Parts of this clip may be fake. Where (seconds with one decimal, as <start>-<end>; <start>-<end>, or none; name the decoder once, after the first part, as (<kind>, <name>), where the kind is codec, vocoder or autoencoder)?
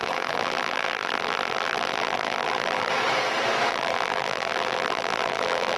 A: 0.0-2.9 (vocoder, BigVGAN v2); 3.7-5.8